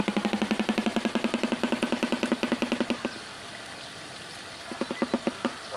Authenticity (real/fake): real